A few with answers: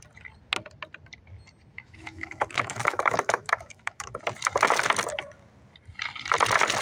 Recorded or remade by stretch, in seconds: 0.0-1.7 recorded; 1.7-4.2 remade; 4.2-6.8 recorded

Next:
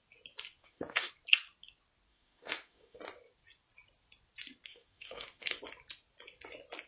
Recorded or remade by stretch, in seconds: 0.0-0.6 recorded; 0.6-1.1 remade; 1.1-2.1 recorded; 2.1-3.0 remade; 3.0-4.7 recorded; 4.7-5.6 remade; 5.6-6.9 recorded

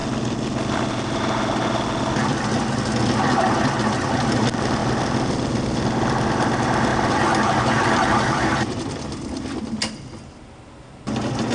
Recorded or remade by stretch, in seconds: 0.0-11.5 recorded

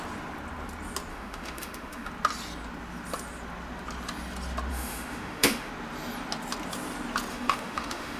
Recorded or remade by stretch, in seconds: 0.0-1.1 recorded; 1.1-2.1 remade; 2.1-4.7 recorded; 4.7-5.7 remade; 5.7-7.3 recorded; 7.3-8.2 remade